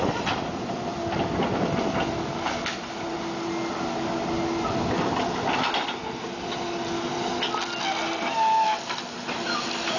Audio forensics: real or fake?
real